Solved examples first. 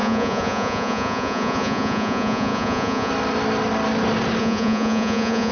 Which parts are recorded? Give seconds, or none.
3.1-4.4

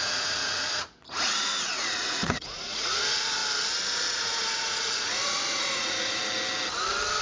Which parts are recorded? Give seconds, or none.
3.4-4.1; 6.2-7.2